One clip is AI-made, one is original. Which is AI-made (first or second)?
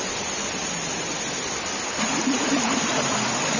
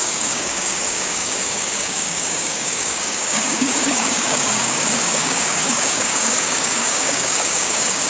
second